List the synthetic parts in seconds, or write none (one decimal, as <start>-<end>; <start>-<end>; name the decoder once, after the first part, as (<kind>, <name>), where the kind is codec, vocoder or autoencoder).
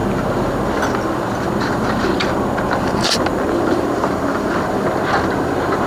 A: 0.0-5.9 (vocoder, BigVGAN v2)